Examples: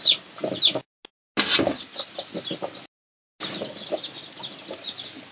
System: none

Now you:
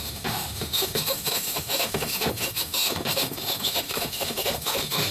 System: autoencoder, DAC-VAE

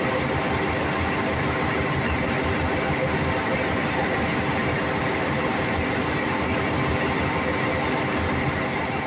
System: none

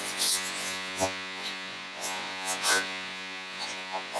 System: vocoder, Vocos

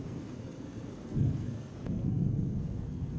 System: codec, SNAC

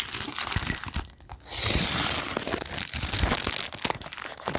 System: none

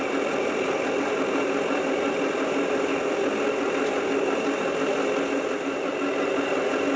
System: none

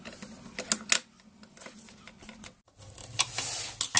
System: none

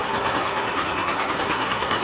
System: codec, SNAC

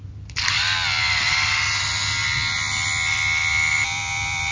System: vocoder, BigVGAN v2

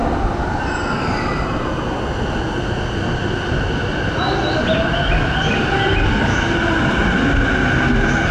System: none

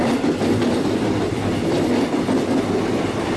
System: none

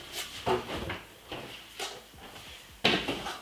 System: none